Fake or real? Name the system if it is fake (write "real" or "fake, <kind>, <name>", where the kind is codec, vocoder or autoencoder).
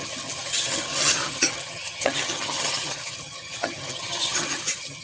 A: fake, vocoder, HiFi-GAN